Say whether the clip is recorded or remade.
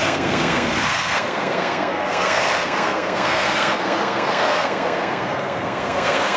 remade